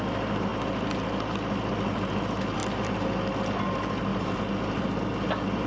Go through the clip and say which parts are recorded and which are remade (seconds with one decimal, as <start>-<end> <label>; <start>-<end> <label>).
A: 0.0-5.7 recorded